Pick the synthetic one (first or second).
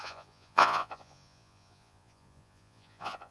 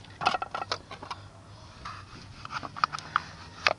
first